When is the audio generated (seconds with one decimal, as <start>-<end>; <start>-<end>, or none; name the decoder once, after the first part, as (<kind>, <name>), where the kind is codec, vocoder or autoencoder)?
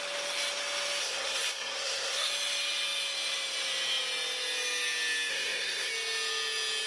1.0-2.3 (codec, SNAC); 5.3-5.9